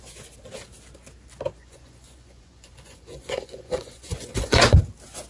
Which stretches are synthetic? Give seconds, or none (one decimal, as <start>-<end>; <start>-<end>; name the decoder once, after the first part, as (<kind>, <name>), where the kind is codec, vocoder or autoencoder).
1.6-4.8 (vocoder, Vocos)